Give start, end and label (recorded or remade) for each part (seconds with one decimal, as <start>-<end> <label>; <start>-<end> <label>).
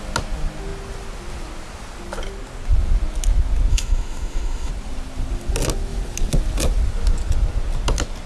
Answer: 0.0-3.7 recorded; 3.7-4.7 remade; 4.7-8.3 recorded